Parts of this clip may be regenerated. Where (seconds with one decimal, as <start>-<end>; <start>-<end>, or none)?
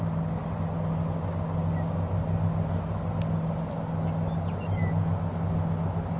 none